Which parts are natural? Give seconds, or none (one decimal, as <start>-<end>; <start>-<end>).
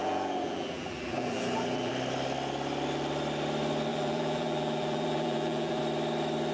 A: 1.9-3.9; 5.8-6.5